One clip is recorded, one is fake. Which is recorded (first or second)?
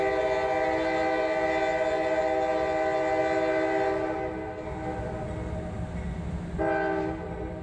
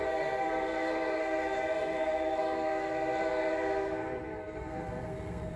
first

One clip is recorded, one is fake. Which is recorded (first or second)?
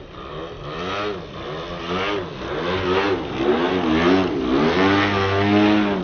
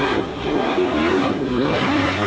first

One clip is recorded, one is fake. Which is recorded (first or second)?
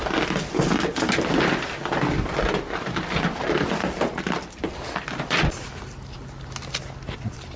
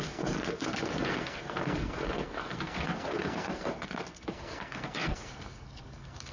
first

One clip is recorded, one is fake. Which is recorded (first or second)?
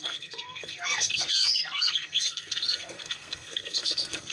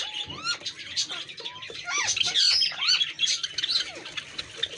second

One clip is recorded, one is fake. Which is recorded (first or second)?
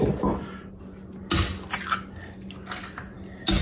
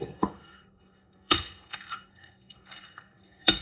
first